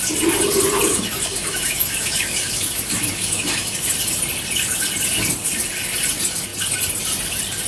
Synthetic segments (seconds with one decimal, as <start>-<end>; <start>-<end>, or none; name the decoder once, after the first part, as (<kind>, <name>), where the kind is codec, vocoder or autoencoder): 0.9-3.8 (autoencoder, DAC-VAE)